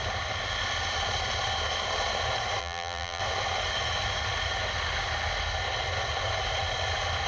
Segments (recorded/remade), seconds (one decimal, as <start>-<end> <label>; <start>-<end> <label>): 0.0-2.6 recorded; 2.6-3.2 remade; 3.2-7.3 recorded